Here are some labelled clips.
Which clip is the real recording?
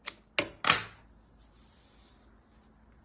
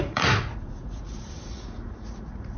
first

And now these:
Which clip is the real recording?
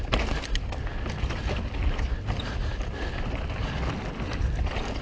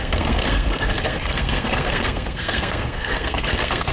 first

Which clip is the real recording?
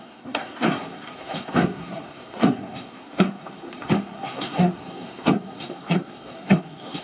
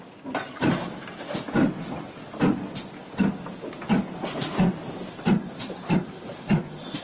second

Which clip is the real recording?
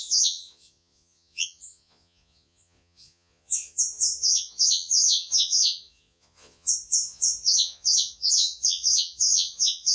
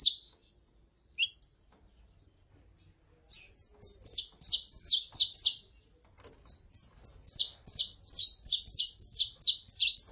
second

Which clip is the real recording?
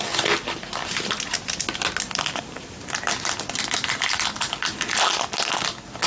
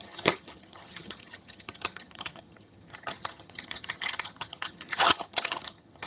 first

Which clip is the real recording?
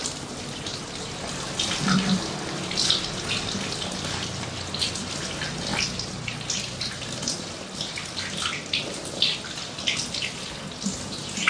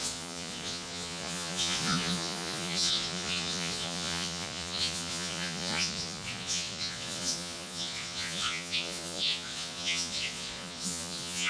first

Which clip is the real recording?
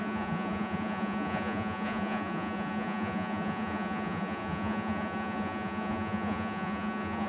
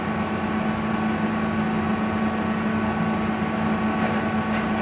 second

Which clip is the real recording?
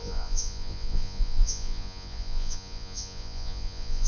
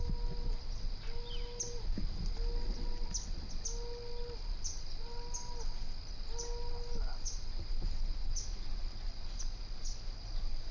second